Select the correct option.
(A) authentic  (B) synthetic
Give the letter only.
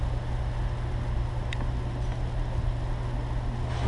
A